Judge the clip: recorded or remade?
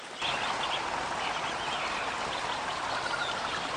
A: recorded